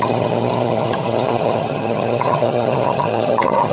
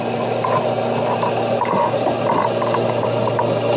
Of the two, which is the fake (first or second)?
first